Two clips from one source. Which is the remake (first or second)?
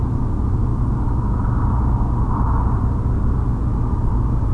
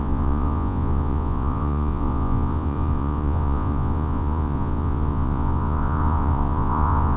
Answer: second